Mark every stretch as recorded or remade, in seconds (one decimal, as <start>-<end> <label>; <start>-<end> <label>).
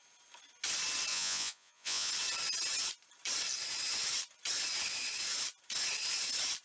0.0-1.1 recorded; 1.1-2.1 remade; 2.1-6.6 recorded